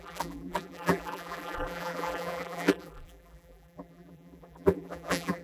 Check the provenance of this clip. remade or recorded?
remade